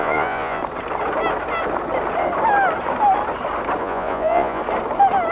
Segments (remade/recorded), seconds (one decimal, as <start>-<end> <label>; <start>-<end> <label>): 0.0-0.6 remade; 0.6-3.8 recorded; 3.8-4.6 remade; 4.6-5.3 recorded